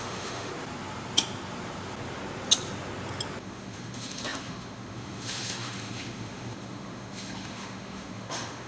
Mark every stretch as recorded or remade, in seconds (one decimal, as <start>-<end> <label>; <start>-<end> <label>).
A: 0.0-0.5 remade; 0.5-3.4 recorded; 3.4-8.7 remade

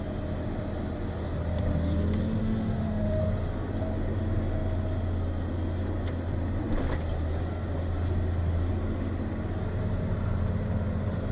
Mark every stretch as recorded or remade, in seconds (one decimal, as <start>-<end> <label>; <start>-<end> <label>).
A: 0.0-2.4 recorded; 2.4-3.2 remade; 3.2-11.3 recorded

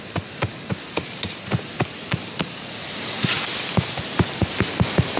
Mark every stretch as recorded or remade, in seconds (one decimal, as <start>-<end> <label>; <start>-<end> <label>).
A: 0.0-5.2 recorded

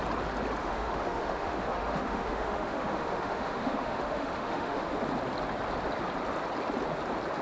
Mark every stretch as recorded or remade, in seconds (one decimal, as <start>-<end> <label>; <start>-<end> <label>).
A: 0.0-0.6 recorded; 0.6-5.0 remade; 5.0-7.4 recorded

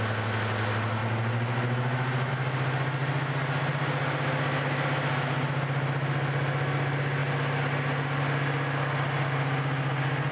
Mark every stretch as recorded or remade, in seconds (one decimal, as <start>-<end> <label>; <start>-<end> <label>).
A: 0.0-10.3 recorded

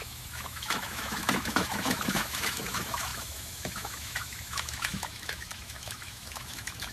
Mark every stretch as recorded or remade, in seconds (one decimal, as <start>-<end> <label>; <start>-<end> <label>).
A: 0.0-6.9 remade